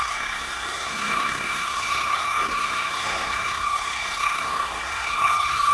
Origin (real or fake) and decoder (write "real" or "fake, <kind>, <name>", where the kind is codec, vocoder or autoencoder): fake, codec, SNAC